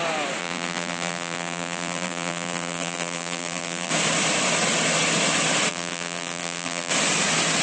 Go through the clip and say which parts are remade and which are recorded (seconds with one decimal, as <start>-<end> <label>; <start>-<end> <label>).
0.0-0.4 recorded; 0.4-3.9 remade; 3.9-5.7 recorded; 5.7-6.9 remade; 6.9-7.6 recorded

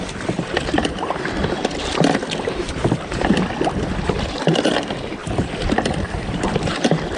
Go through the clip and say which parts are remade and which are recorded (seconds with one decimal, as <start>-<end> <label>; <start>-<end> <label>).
0.0-2.2 recorded; 2.2-3.3 remade; 3.3-7.2 recorded

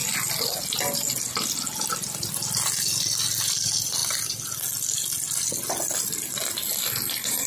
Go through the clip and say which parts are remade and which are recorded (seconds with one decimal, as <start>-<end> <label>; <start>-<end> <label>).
0.0-7.5 recorded

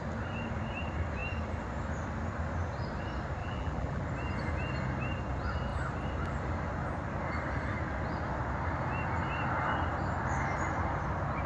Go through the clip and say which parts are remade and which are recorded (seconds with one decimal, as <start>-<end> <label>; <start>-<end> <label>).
0.0-3.4 recorded; 3.4-4.0 remade; 4.0-11.5 recorded

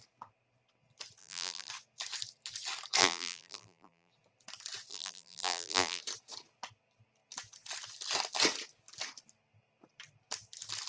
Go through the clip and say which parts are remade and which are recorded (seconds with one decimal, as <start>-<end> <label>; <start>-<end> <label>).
0.0-1.2 recorded; 1.2-1.7 remade; 1.7-3.0 recorded; 3.0-4.1 remade; 4.1-4.9 recorded; 4.9-6.0 remade; 6.0-10.9 recorded

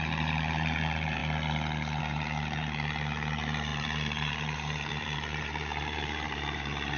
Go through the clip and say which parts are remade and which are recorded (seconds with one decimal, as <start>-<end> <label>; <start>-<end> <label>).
0.0-1.2 remade; 1.2-2.0 recorded; 2.0-7.0 remade